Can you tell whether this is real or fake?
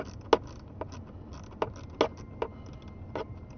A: real